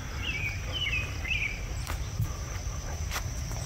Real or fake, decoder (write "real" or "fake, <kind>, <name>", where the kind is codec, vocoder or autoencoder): real